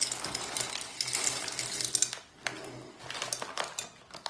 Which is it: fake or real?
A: real